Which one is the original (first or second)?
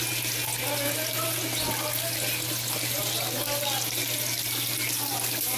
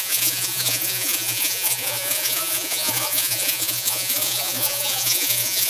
first